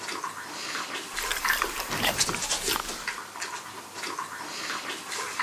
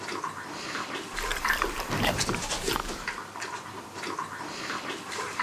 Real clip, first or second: first